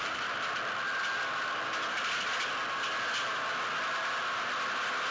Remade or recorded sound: recorded